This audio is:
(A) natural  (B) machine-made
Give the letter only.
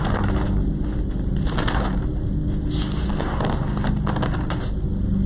A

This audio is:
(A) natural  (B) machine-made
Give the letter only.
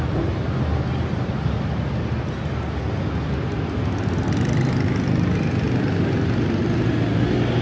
A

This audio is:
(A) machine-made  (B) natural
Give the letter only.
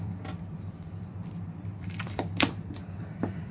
A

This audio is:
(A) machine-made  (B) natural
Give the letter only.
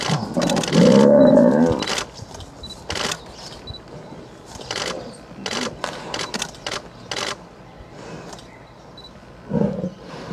B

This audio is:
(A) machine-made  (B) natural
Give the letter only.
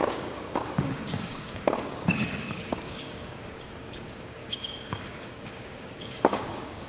A